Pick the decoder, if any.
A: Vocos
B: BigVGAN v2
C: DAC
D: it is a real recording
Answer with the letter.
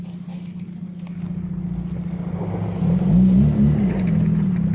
D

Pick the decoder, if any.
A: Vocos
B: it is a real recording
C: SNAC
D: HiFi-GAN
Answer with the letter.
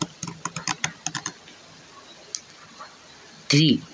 B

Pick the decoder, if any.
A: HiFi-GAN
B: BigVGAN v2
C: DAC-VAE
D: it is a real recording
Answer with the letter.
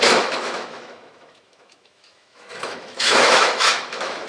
C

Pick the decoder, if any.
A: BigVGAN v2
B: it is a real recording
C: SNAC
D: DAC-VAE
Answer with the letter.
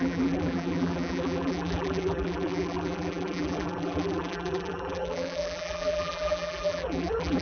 A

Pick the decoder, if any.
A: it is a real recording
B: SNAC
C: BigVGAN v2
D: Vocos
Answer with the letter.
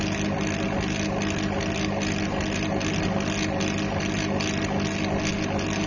A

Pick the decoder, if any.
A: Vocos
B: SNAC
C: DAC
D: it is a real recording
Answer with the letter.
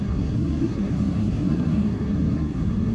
B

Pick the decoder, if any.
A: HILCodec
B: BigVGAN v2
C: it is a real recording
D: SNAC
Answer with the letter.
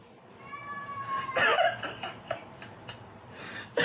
B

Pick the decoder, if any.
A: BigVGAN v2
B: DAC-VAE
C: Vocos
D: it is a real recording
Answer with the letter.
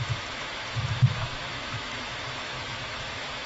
B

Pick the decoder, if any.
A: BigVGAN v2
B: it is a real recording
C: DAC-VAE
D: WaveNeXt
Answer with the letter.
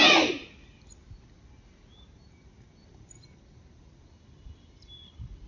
B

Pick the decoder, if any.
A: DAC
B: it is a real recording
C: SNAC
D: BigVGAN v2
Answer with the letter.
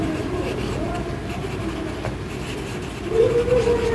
B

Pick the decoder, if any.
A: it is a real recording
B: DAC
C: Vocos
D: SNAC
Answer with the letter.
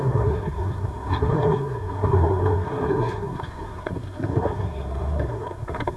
D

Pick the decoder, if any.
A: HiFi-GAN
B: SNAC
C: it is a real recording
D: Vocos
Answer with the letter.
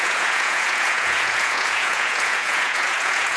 D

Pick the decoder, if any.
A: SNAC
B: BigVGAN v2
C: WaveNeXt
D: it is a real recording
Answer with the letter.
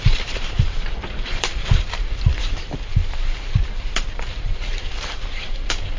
B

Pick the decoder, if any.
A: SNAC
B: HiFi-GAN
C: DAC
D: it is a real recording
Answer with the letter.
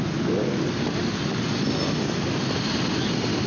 D